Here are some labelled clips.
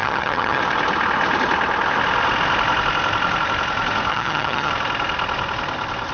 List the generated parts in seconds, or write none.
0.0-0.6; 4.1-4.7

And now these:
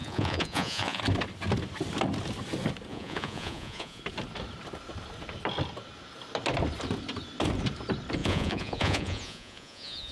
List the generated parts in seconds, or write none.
0.0-1.0; 2.9-4.0; 8.2-10.1

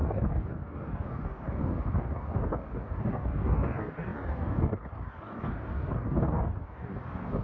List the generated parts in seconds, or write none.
0.0-7.4

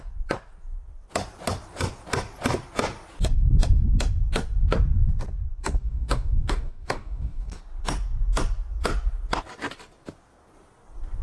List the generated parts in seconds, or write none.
5.6-7.6